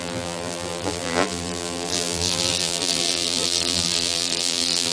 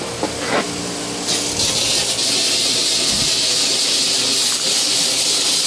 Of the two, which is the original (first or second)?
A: second